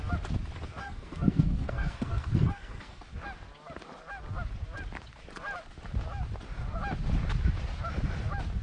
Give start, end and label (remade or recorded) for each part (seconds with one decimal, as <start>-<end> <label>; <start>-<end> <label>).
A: 0.0-0.8 recorded; 0.8-3.0 remade; 3.0-8.6 recorded